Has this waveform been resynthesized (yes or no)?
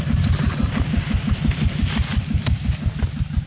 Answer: no